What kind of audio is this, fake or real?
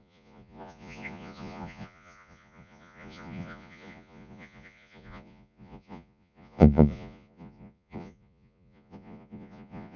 fake